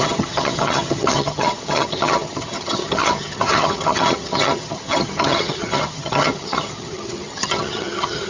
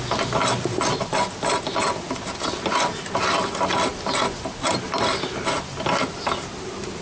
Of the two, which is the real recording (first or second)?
second